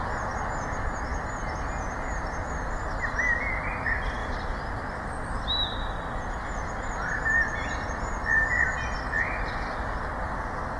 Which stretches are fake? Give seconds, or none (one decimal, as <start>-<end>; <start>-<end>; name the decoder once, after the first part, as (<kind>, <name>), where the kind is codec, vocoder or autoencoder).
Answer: 4.2-6.2 (vocoder, BigVGAN v2)